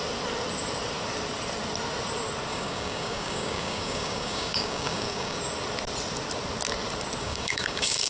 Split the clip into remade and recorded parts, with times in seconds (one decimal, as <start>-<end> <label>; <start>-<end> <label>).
0.0-2.5 recorded; 2.5-5.4 remade; 5.4-7.2 recorded; 7.2-8.1 remade